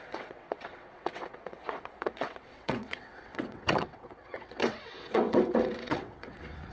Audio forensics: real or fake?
fake